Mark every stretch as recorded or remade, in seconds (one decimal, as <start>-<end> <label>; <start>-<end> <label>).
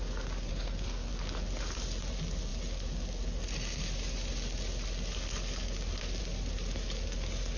0.0-0.5 recorded; 0.5-1.1 remade; 1.1-7.6 recorded